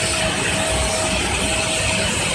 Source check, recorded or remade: recorded